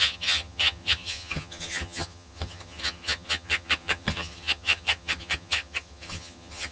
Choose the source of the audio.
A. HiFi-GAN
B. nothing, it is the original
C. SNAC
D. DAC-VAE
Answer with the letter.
A